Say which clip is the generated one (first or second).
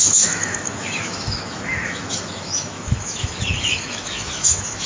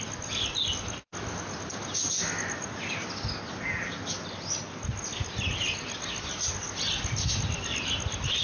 first